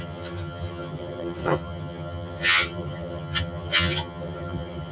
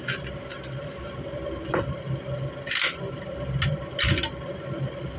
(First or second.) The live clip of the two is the second